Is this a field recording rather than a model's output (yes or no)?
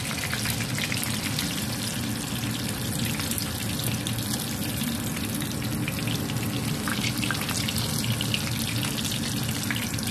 yes